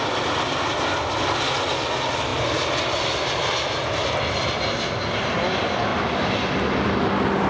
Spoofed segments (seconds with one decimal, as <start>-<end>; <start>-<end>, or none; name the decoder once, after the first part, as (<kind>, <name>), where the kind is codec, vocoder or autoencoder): none